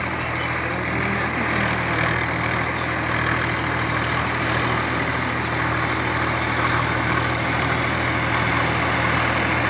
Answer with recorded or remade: recorded